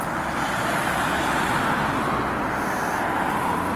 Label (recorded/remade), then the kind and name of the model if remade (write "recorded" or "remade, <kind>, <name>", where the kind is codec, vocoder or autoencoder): recorded